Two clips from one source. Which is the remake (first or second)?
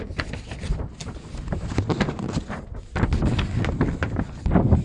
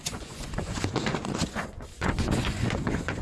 second